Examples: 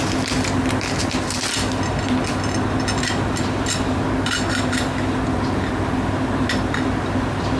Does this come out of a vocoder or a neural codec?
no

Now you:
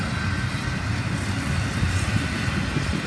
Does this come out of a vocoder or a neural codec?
no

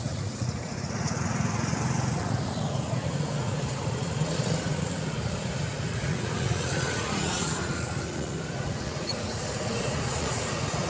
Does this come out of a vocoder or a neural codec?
yes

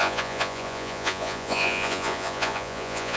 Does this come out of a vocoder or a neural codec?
yes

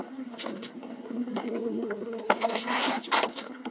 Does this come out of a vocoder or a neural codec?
yes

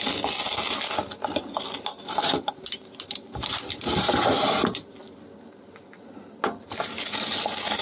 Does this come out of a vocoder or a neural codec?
no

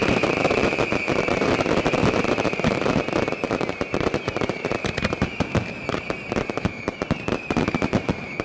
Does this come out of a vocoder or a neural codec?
yes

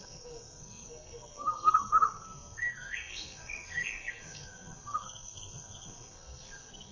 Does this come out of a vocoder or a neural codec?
yes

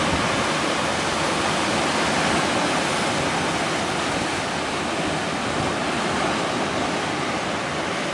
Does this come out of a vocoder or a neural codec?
no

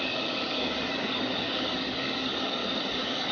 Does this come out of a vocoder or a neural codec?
yes